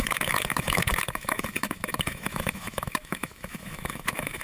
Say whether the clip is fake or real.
fake